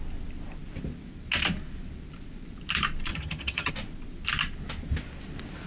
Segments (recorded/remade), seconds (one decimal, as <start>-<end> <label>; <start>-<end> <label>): 0.0-3.1 recorded; 3.1-3.7 remade; 3.7-5.7 recorded